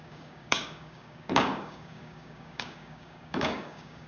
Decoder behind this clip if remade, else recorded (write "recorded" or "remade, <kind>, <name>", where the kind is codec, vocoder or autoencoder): remade, codec, DAC